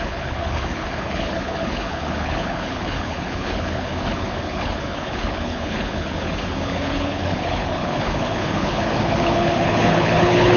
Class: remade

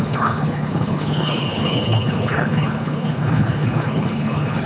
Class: remade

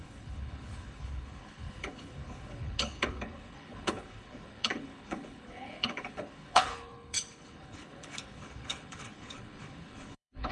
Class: remade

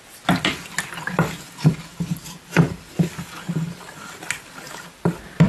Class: recorded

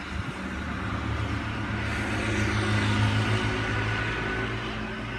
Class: recorded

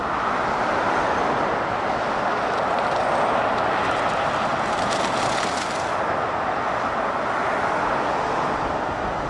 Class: recorded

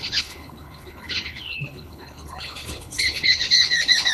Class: remade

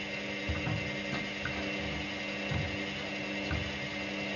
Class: recorded